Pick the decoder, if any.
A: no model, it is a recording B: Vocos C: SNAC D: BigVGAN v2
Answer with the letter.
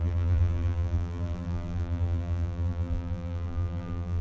D